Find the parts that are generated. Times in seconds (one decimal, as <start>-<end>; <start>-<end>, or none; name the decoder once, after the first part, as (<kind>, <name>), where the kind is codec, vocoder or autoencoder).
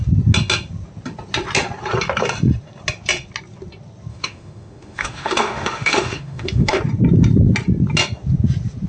4.1-6.8 (autoencoder, DAC-VAE)